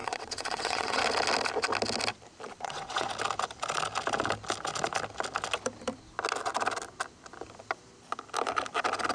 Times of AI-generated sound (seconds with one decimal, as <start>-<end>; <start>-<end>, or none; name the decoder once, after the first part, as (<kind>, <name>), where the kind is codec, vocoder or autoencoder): 0.0-1.0 (vocoder, WaveNeXt); 2.5-3.1